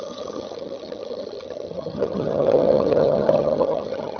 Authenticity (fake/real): fake